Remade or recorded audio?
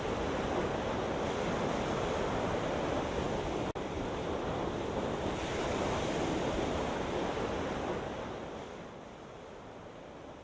recorded